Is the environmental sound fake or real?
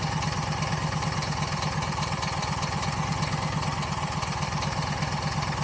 real